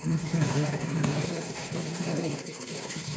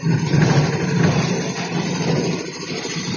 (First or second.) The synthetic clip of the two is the first